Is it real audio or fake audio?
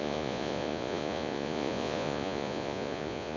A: fake